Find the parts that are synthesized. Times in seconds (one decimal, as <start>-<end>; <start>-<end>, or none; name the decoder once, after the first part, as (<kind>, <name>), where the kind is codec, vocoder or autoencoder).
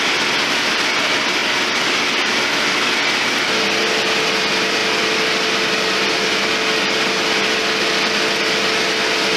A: none